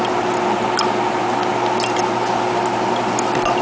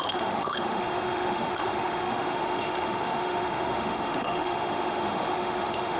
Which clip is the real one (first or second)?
first